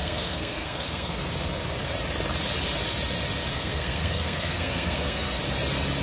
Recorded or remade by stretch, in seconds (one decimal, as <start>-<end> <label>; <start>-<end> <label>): 0.0-1.2 remade; 1.2-3.5 recorded; 3.5-5.4 remade; 5.4-6.0 recorded